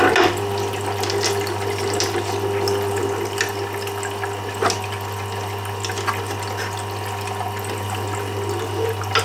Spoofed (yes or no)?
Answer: no